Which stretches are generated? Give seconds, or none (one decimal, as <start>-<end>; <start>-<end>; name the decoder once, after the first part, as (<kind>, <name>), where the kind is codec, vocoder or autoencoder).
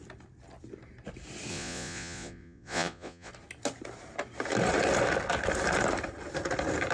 1.5-3.3 (vocoder, Vocos)